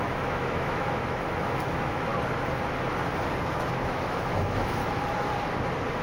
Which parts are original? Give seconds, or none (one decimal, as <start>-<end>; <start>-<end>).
2.1-3.5; 4.8-6.0